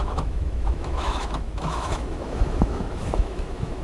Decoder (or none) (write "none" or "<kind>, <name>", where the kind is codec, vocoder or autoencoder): autoencoder, DAC-VAE